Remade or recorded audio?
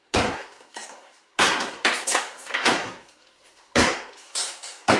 remade